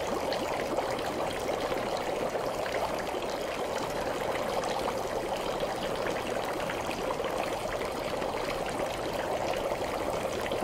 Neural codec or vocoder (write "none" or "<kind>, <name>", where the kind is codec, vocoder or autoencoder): none